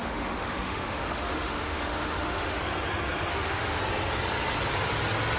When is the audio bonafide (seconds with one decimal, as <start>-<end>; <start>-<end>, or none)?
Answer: 2.6-3.3; 3.8-5.4